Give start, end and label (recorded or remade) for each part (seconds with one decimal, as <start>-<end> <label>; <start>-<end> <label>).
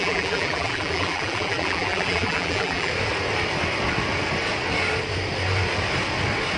0.0-2.9 remade; 2.9-6.6 recorded